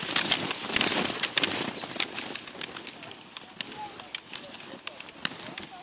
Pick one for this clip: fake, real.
real